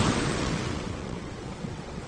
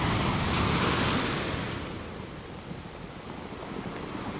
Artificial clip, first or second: first